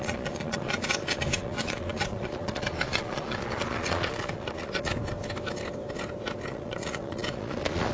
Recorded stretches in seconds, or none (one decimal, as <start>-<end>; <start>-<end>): 4.9-6.5